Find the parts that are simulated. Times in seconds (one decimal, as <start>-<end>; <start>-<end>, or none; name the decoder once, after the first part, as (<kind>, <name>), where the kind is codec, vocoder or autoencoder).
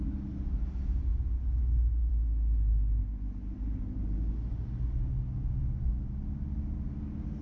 none